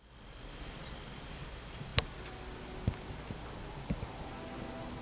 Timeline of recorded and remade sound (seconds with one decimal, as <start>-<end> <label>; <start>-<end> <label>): 0.0-5.0 recorded